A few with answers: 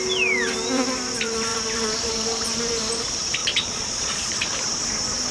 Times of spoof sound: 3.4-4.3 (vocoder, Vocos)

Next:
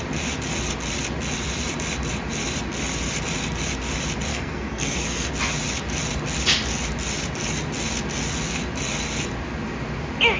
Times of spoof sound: 4.3-5.3 (codec, SNAC)

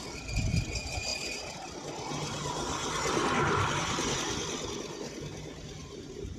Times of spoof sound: 1.1-3.7 (vocoder, BigVGAN v2); 5.8-6.4

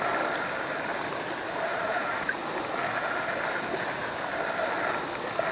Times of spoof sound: 1.7-2.4 (vocoder, Vocos)

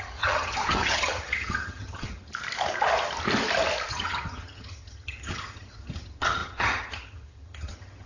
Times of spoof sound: 0.0-2.3 (vocoder, HiFi-GAN); 3.9-8.1

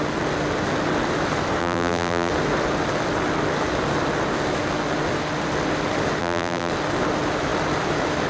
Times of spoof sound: 1.6-2.3 (vocoder, BigVGAN v2); 6.2-6.7

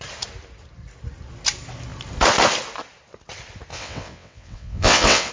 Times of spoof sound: 3.7-5.3 (vocoder, WaveNeXt)

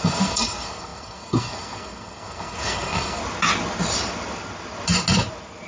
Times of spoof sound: 0.0-3.2 (codec, SNAC)